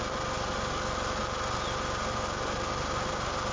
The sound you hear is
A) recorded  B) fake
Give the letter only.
A